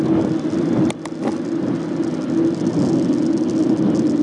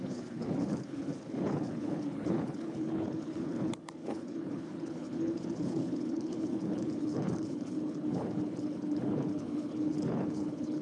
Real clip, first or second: first